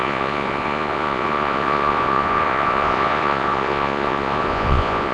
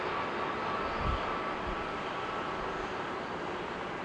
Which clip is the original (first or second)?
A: second